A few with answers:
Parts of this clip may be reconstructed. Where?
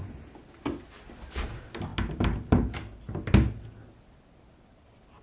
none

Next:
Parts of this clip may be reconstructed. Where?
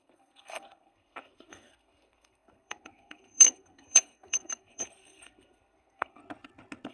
0.0-6.2 (codec, SNAC)